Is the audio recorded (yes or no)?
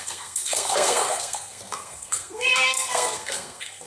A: no